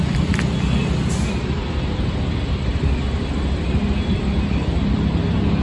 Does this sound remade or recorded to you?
recorded